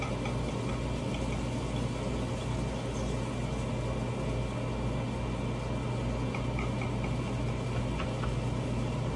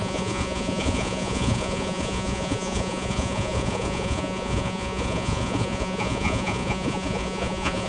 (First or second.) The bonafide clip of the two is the first